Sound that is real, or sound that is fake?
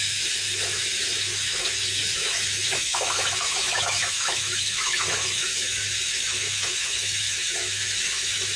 fake